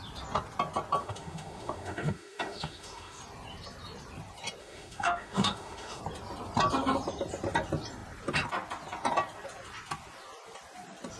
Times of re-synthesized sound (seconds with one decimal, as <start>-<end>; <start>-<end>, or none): 1.0-3.2; 4.6-6.0